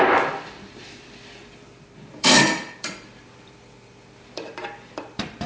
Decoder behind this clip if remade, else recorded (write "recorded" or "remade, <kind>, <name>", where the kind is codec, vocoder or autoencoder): remade, vocoder, BigVGAN v2